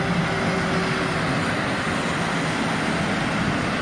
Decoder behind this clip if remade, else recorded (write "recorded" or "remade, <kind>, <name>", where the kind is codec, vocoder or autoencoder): recorded